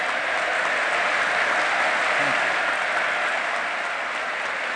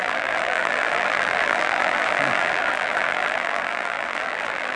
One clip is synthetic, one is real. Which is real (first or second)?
first